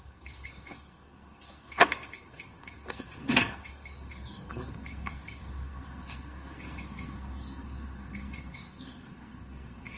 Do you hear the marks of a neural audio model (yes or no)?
yes